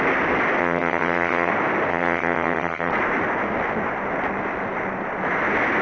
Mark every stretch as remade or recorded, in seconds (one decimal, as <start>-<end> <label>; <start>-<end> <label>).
0.0-0.6 recorded; 0.6-1.5 remade; 1.5-1.9 recorded; 1.9-2.9 remade; 2.9-5.8 recorded